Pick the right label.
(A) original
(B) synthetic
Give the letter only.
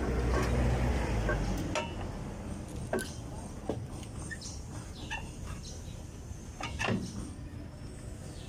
A